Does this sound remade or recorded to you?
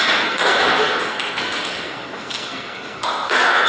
remade